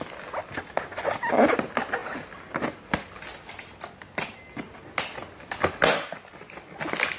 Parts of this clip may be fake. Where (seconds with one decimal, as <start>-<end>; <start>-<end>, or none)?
none